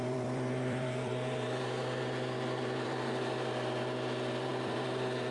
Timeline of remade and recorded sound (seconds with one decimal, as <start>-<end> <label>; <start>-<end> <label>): 0.0-5.3 remade